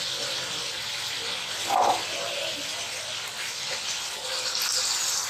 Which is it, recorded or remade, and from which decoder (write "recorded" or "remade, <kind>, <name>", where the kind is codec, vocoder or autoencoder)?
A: recorded